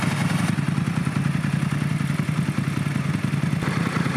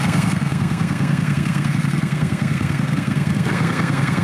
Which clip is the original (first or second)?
first